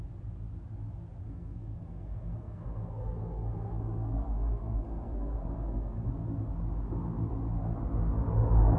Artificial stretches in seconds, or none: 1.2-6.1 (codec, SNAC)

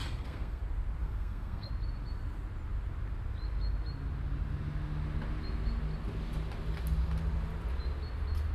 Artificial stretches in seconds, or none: 0.0-0.6 (codec, SNAC); 1.0-1.7

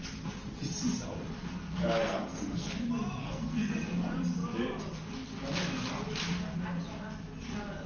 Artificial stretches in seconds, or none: 2.0-2.7 (codec, SNAC); 3.2-3.7

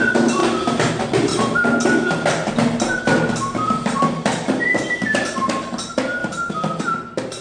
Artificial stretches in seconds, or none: none